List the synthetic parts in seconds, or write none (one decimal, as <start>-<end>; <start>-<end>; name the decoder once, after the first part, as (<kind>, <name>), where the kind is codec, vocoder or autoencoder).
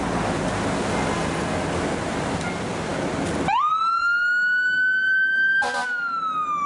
none